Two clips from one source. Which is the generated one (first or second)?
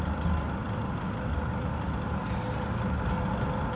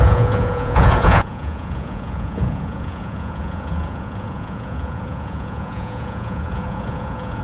second